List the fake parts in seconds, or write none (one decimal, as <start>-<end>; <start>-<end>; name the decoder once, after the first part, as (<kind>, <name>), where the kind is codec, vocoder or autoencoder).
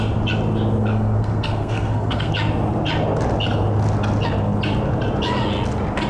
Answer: 0.8-2.3 (codec, SNAC)